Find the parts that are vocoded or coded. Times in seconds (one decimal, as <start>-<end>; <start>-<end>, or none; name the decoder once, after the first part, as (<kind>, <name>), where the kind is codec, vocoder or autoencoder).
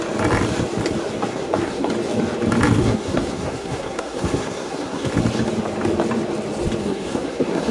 1.3-1.9 (codec, SNAC); 2.8-5.1; 6.8-7.7